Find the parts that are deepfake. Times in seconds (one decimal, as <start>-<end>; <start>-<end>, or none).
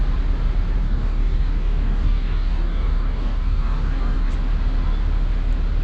0.8-4.3